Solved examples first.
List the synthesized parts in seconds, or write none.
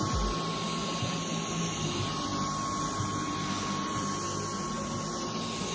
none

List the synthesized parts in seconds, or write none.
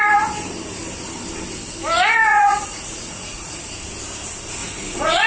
2.3-3.6 (vocoder, Vocos); 4.6-5.3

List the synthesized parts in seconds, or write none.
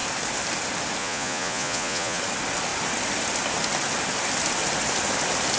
1.0-2.2 (vocoder, Vocos)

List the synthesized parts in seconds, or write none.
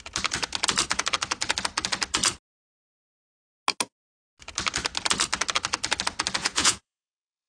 6.4-7.5 (vocoder, Vocos)